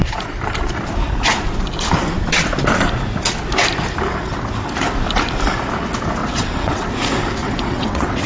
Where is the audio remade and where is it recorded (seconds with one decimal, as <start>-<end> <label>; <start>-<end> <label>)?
0.0-6.2 recorded; 6.2-6.9 remade; 6.9-7.4 recorded; 7.4-8.3 remade